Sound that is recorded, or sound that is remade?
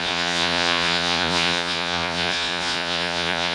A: remade